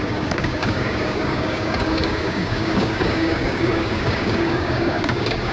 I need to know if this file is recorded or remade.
remade